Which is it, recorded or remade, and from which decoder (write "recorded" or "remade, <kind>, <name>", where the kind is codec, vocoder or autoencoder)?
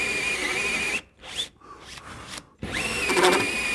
recorded